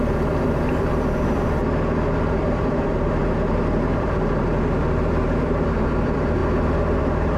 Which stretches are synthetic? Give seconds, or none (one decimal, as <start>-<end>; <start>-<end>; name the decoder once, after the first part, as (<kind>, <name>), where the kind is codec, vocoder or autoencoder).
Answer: 0.0-1.6 (vocoder, BigVGAN v2); 2.3-6.4; 7.0-7.4